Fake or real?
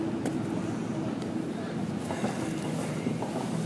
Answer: real